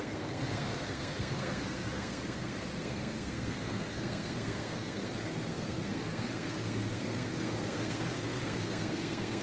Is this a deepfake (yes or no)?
yes